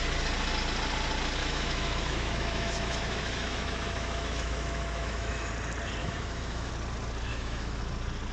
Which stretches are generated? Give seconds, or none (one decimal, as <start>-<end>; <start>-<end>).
1.4-5.5; 6.0-6.7; 7.3-7.8